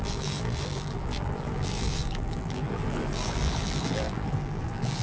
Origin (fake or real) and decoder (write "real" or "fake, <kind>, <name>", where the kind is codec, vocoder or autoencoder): fake, vocoder, BigVGAN v2